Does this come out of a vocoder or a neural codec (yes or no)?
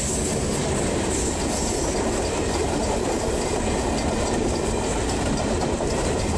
no